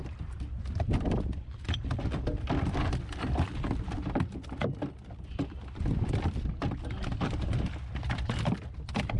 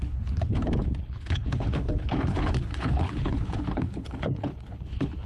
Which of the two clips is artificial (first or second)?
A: second